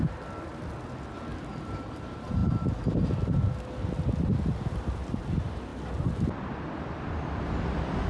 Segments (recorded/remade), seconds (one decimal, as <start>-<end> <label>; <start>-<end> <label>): 0.0-8.1 recorded